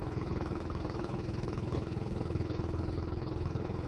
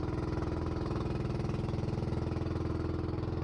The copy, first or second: first